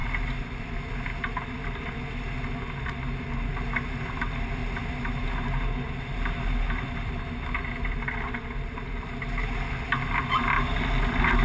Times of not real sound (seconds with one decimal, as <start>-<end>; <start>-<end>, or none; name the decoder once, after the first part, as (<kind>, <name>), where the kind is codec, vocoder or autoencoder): none

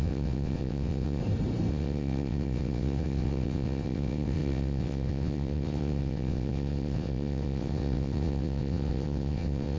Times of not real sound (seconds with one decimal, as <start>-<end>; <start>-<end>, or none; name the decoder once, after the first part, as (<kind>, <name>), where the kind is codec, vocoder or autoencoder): 0.0-1.2 (vocoder, WaveNeXt); 1.7-9.8

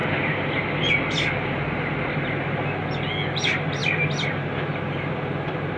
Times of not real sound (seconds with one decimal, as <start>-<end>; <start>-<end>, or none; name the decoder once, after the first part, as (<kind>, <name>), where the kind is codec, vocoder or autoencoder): none

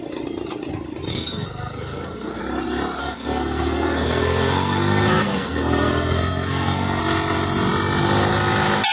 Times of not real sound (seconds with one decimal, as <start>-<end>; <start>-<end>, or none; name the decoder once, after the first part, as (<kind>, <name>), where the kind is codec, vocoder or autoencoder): 1.1-2.4 (codec, SNAC); 3.0-7.0

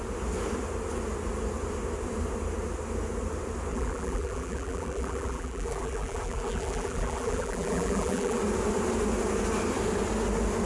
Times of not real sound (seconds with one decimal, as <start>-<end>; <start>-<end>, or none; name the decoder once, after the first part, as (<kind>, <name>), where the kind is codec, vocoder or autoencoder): 3.7-8.4 (vocoder, BigVGAN v2)

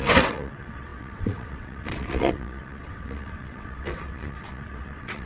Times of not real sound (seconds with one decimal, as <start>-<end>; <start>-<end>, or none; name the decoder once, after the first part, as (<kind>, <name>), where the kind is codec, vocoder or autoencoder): 0.0-5.3 (vocoder, WaveNeXt)